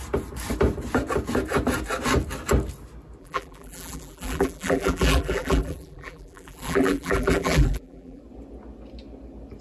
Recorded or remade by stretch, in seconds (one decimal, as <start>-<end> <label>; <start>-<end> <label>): 0.0-3.2 recorded; 3.2-8.2 remade; 8.2-9.6 recorded